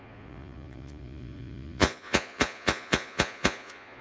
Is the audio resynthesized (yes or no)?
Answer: yes